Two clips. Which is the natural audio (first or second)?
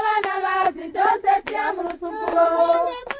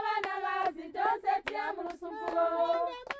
second